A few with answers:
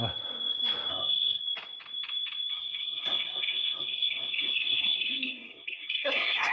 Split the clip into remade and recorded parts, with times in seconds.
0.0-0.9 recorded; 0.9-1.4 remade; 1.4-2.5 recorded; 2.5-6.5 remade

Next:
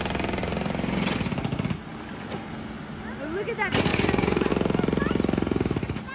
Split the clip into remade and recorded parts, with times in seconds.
0.0-3.9 recorded; 3.9-4.5 remade; 4.5-6.1 recorded